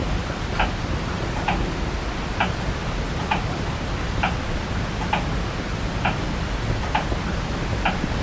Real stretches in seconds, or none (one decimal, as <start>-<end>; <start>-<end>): 0.0-8.2